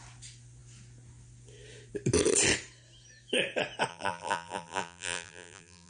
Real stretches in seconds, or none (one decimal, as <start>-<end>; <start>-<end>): 0.0-3.9